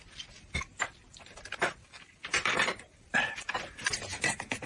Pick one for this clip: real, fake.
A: fake